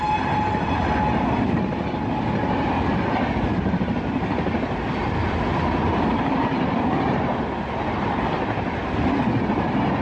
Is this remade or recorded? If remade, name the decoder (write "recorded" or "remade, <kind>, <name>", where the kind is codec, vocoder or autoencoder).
recorded